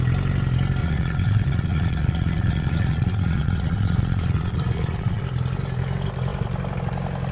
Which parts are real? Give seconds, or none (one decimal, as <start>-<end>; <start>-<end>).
0.0-0.8; 5.2-7.3